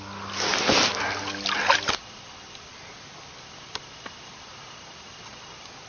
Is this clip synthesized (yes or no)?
no